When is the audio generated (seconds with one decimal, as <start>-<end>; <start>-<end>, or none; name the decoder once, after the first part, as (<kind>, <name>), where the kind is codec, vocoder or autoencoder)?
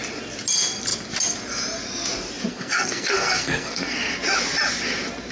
2.5-4.1 (codec, SNAC)